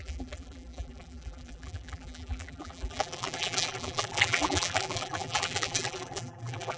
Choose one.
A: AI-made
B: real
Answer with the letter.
A